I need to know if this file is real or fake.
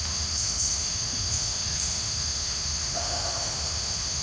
fake